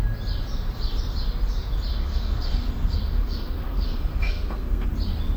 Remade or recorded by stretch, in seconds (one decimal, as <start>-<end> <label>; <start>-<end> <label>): 0.0-1.9 recorded; 1.9-4.9 remade; 4.9-5.4 recorded